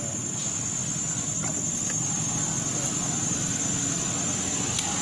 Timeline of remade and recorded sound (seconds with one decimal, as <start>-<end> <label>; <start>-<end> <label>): 0.0-5.0 recorded